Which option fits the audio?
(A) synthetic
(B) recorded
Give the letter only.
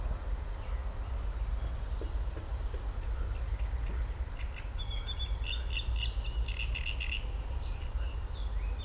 B